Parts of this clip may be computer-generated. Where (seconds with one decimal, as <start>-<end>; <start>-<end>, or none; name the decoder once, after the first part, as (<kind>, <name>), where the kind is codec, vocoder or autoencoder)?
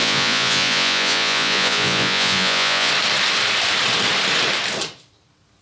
0.0-2.9 (vocoder, Vocos)